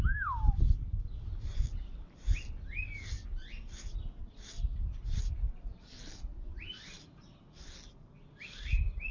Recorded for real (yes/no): yes